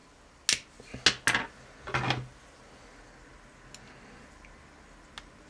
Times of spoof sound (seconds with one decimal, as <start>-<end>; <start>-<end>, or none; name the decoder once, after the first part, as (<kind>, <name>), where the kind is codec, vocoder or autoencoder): none

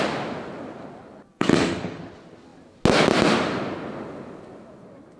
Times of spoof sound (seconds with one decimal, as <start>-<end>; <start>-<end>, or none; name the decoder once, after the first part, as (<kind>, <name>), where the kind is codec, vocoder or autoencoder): 1.3-2.0 (codec, DAC)

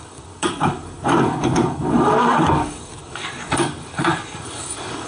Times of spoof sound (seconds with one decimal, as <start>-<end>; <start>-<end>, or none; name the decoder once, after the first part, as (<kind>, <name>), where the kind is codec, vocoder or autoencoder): 0.0-5.1 (codec, DAC)

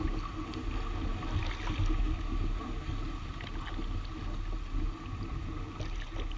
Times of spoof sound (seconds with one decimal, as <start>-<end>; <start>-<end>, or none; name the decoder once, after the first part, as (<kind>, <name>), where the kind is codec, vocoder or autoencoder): none